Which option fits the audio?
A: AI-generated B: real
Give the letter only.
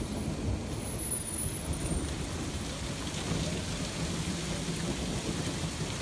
B